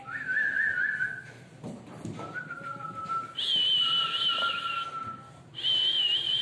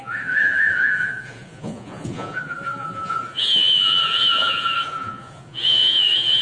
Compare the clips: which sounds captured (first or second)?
first